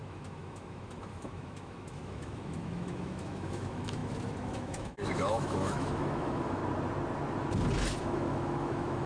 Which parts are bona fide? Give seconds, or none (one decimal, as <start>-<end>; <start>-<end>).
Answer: 6.6-8.0